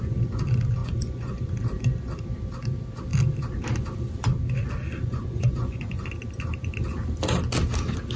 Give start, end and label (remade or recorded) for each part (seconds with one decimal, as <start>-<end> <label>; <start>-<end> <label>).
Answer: 0.0-0.8 recorded; 0.8-1.5 remade; 1.5-4.8 recorded; 4.8-6.1 remade; 6.1-8.2 recorded